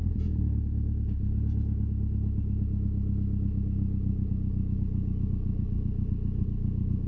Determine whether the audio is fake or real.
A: real